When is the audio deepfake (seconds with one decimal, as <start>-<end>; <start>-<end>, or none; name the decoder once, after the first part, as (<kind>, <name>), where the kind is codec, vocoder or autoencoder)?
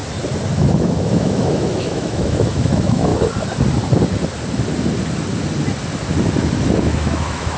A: 0.5-3.1 (autoencoder, DAC-VAE); 6.8-7.6